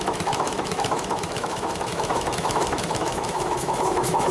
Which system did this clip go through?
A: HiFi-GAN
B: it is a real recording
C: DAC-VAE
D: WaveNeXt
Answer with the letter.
C